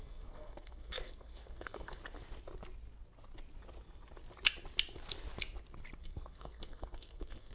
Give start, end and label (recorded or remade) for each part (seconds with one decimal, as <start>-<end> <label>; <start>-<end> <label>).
0.0-2.0 remade; 2.0-6.0 recorded; 6.0-7.5 remade